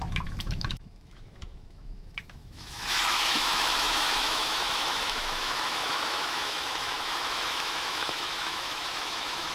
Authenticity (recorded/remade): remade